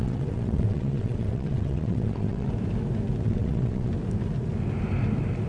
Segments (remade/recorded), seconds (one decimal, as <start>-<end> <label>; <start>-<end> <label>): 0.0-2.5 remade; 2.5-3.2 recorded; 3.2-3.9 remade; 3.9-5.5 recorded